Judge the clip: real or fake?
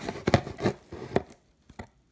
real